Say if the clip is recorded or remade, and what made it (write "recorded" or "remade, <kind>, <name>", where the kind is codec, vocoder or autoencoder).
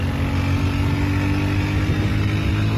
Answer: recorded